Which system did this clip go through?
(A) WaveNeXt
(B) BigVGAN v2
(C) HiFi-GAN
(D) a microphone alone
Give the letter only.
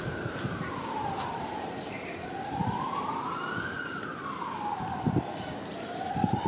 B